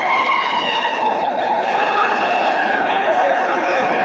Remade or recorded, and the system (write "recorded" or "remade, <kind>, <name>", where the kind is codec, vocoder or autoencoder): remade, codec, HILCodec